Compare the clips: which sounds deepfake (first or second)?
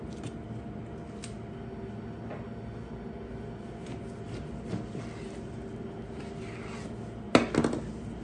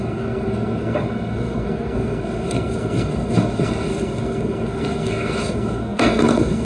second